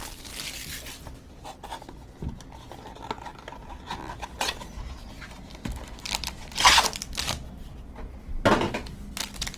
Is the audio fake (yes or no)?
no